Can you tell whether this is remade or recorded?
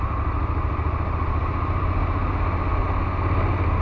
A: recorded